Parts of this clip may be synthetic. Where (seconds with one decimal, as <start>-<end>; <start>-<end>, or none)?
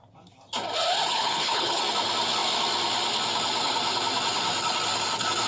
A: 1.1-1.8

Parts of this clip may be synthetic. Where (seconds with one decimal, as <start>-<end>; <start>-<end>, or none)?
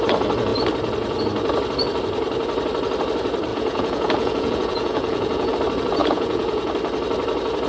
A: 3.5-5.5; 6.0-6.7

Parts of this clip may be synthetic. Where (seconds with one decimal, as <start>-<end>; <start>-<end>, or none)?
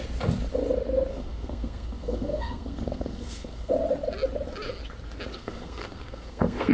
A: 1.1-3.7; 5.3-6.7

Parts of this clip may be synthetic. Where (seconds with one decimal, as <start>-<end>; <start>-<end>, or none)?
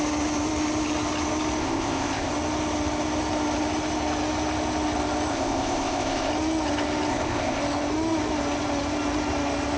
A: 1.6-2.3; 5.3-6.3; 7.1-7.6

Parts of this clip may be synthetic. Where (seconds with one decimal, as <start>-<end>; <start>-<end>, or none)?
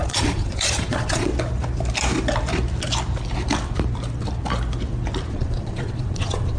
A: 0.0-1.3; 5.3-6.6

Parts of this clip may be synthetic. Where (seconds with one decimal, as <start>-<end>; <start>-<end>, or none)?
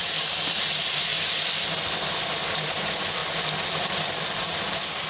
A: 0.0-1.1; 2.0-3.2; 4.2-5.1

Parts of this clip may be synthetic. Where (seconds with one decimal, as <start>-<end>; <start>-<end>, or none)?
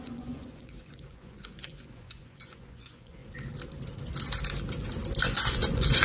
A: 0.0-3.2; 5.2-6.0